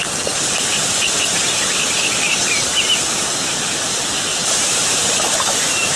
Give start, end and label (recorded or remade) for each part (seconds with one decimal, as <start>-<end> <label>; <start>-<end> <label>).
0.0-4.3 recorded; 4.3-5.0 remade; 5.0-6.0 recorded